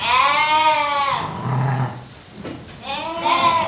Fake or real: real